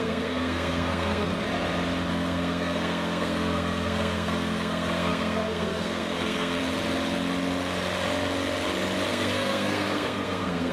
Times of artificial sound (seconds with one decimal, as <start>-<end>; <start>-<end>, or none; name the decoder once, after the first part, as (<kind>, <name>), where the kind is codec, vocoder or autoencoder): 0.0-1.3 (codec, SNAC); 2.1-6.6; 9.1-10.7